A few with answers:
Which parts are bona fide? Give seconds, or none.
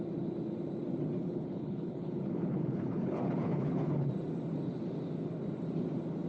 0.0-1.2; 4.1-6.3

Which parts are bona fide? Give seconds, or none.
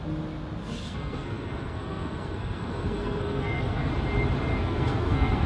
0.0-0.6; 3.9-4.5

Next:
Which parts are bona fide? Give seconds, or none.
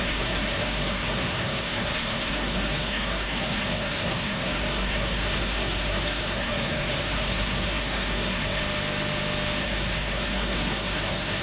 8.6-9.6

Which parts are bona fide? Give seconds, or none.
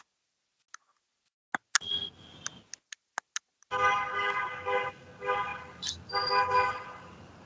0.0-7.5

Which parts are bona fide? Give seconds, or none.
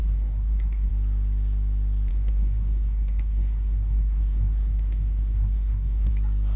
0.9-2.1; 6.1-6.6